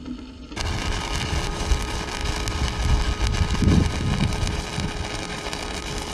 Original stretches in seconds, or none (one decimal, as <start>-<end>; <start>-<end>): 2.2-4.3; 4.7-5.3